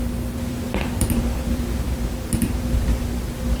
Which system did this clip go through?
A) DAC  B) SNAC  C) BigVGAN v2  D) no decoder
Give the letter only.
C